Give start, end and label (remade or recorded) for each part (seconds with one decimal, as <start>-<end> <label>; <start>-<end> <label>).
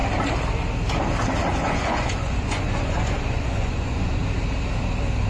0.0-1.5 recorded; 1.5-4.2 remade; 4.2-5.3 recorded